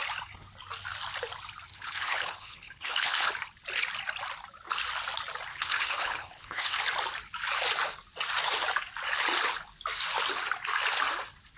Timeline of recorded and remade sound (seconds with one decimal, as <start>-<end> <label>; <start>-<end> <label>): 0.0-1.7 recorded; 1.7-3.3 remade; 3.3-5.5 recorded; 5.5-6.8 remade; 6.8-11.6 recorded